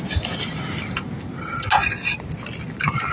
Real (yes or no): yes